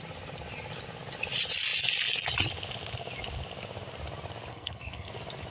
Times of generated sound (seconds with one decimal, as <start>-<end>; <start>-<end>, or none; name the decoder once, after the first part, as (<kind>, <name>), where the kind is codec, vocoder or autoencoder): 4.5-5.1 (codec, SNAC)